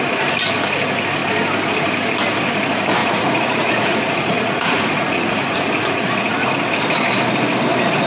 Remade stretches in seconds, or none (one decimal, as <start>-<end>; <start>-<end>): 3.0-6.5